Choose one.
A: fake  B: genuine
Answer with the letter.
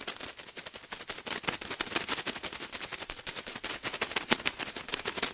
B